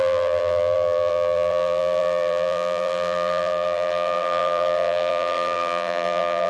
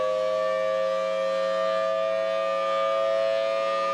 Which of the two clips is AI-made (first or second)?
first